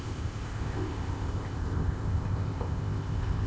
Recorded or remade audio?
remade